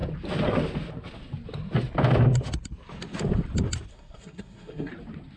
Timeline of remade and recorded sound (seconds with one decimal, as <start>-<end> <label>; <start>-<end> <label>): 0.0-3.9 recorded; 3.9-4.9 remade; 4.9-5.4 recorded